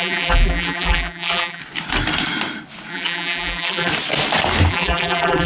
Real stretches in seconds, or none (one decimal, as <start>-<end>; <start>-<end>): 1.6-2.9; 3.9-4.7